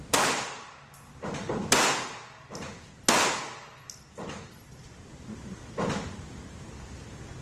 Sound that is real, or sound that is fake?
real